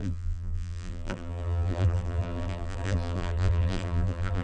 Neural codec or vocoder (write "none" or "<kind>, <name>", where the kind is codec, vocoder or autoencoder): vocoder, BigVGAN v2